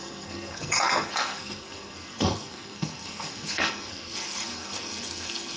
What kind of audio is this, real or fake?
fake